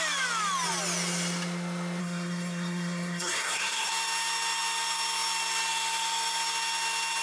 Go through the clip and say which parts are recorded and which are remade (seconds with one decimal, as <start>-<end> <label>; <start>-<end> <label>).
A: 0.0-2.0 recorded; 2.0-3.9 remade; 3.9-7.2 recorded